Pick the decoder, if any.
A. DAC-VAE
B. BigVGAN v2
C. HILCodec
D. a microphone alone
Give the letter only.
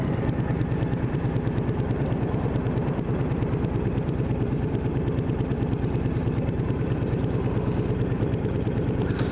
B